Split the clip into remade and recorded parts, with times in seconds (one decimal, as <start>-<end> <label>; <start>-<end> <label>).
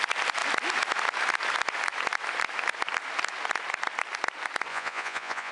0.0-4.7 recorded; 4.7-5.5 remade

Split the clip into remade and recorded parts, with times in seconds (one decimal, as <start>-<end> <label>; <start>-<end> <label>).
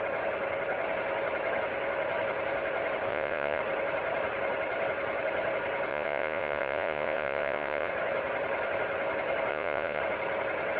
0.0-3.1 recorded; 3.1-3.6 remade; 3.6-5.9 recorded; 5.9-7.9 remade; 7.9-9.5 recorded; 9.5-10.0 remade; 10.0-10.8 recorded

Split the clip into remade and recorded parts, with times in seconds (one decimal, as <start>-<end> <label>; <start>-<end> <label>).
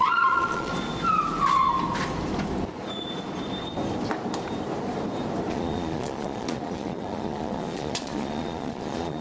0.0-0.7 remade; 0.7-5.5 recorded; 5.5-9.2 remade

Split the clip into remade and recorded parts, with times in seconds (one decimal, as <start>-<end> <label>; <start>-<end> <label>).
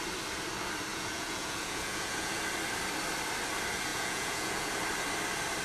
0.0-0.9 recorded; 0.9-2.4 remade; 2.4-3.9 recorded; 3.9-4.7 remade; 4.7-5.6 recorded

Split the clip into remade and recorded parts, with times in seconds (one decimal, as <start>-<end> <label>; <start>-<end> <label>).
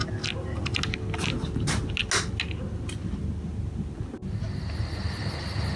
0.0-5.8 recorded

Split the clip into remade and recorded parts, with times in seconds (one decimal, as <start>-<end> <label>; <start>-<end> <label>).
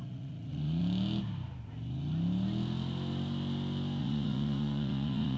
0.0-0.8 remade; 0.8-4.0 recorded; 4.0-5.4 remade